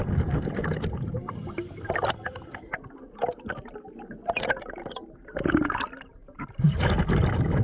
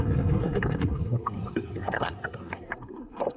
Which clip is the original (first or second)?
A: first